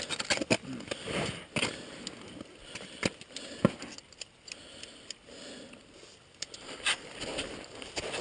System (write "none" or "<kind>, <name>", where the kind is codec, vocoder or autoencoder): none